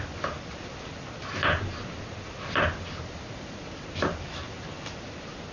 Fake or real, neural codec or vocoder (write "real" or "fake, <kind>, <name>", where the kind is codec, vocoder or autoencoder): real